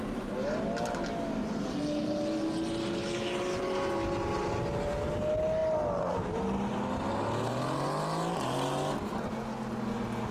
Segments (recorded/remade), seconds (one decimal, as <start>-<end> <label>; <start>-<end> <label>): 0.0-10.3 recorded